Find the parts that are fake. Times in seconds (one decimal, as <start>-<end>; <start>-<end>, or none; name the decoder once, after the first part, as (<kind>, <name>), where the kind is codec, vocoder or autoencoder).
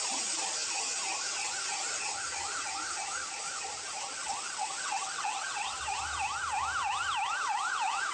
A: 4.2-5.8 (vocoder, WaveNeXt)